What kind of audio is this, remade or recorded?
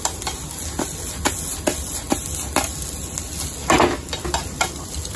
recorded